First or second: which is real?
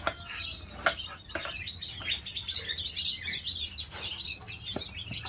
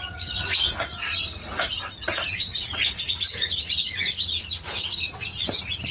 first